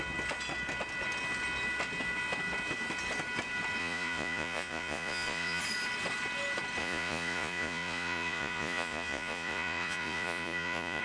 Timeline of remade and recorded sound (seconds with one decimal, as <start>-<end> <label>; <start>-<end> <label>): 0.0-3.8 recorded; 3.8-5.6 remade; 5.6-6.8 recorded; 6.8-11.0 remade